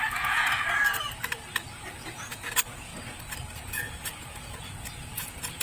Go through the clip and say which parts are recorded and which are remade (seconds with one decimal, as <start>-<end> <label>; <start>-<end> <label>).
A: 0.0-0.8 remade; 0.8-2.0 recorded; 2.0-2.9 remade; 2.9-3.6 recorded; 3.6-5.6 remade